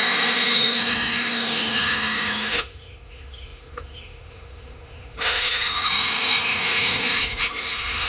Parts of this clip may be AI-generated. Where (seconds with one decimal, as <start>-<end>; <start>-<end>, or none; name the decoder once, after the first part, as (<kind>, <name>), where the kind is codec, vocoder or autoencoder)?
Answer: 0.0-8.1 (autoencoder, DAC-VAE)